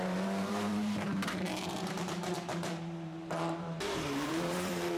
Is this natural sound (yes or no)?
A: no